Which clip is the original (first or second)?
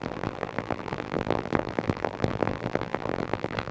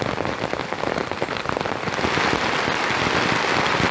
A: second